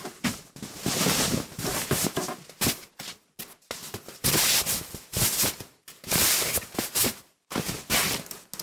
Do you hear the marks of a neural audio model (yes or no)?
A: no